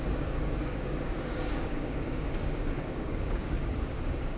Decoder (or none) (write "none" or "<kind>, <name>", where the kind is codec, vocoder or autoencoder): codec, DAC